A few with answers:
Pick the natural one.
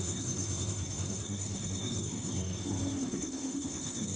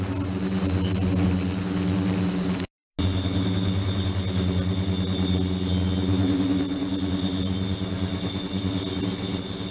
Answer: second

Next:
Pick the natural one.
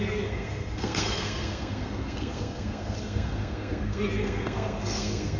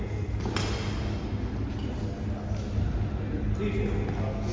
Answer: second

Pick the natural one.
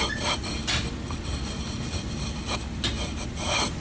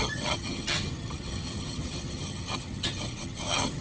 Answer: first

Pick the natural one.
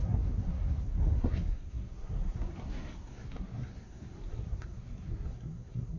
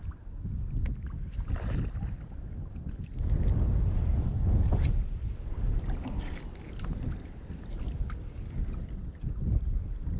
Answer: second